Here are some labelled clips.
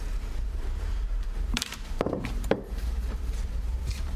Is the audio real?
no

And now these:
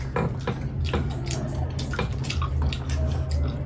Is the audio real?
yes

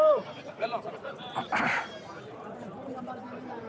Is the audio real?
no